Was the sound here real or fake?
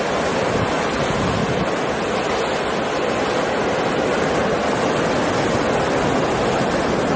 real